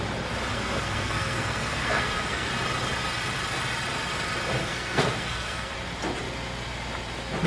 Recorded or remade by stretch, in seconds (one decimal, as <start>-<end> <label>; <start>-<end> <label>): 0.0-0.5 recorded; 0.5-2.5 remade; 2.5-4.6 recorded; 4.6-5.7 remade; 5.7-7.5 recorded